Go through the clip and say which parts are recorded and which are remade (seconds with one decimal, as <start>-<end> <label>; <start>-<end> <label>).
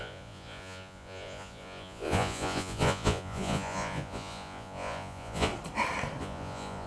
0.0-5.5 remade; 5.5-6.2 recorded; 6.2-6.9 remade